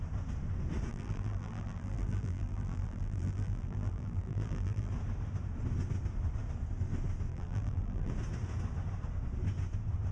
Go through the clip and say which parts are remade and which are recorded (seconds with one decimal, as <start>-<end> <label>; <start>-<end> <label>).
0.0-0.9 recorded; 0.9-4.9 remade; 4.9-7.3 recorded; 7.3-8.1 remade; 8.1-10.1 recorded